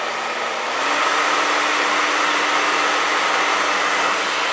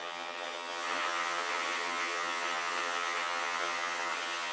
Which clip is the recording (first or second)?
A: first